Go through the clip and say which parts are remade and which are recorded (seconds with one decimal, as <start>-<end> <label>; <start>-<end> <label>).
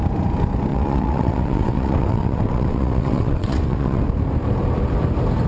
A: 0.0-0.7 recorded; 0.7-4.0 remade; 4.0-5.5 recorded